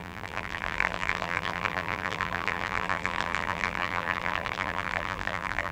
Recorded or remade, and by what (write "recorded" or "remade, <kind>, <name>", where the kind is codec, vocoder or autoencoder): remade, vocoder, BigVGAN v2